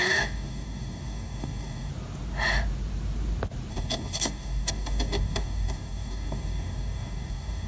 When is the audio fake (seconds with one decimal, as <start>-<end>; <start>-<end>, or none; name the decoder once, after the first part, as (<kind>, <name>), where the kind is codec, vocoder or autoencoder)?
0.0-1.9 (codec, DAC); 3.7-7.7